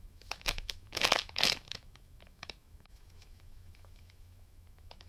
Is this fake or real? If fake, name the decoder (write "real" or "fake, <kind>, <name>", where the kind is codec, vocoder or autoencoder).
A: fake, autoencoder, DAC-VAE